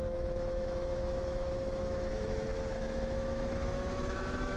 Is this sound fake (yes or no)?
yes